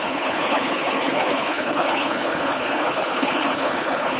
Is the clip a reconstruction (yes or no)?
yes